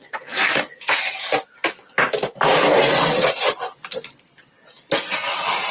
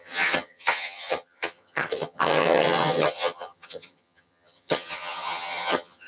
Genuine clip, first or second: first